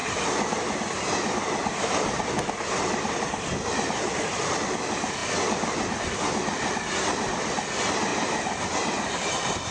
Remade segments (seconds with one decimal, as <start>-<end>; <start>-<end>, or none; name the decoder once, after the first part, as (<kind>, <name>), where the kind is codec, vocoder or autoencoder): none